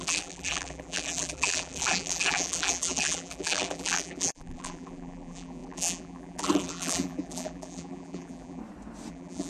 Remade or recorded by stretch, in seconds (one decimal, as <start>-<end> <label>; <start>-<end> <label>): 0.0-8.6 remade; 8.6-9.1 recorded; 9.1-9.5 remade